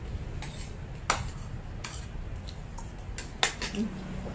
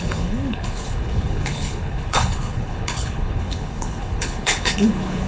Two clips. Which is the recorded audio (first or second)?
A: first